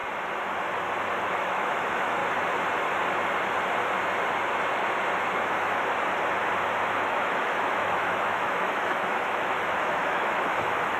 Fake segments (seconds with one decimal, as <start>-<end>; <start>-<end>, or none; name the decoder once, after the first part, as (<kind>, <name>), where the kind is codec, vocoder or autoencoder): 1.2-2.2 (autoencoder, DAC-VAE); 7.1-11.0